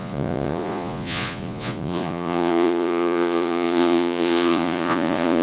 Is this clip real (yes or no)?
no